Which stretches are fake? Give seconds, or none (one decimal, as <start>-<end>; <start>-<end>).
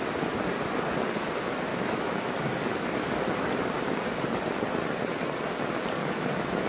1.7-2.2; 6.0-6.7